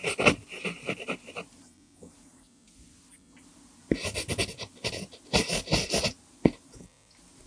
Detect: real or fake real